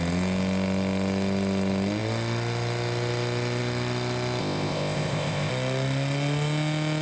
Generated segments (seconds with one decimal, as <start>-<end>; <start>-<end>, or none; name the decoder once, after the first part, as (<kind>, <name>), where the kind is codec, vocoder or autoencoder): 4.4-5.5 (codec, ZipCodec)